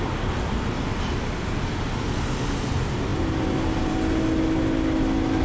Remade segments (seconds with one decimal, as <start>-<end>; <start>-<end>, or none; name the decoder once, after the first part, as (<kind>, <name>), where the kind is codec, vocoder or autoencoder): none